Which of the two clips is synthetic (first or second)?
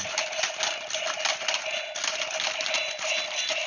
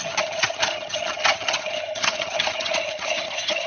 second